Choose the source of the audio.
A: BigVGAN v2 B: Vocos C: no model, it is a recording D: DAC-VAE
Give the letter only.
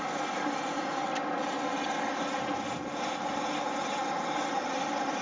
C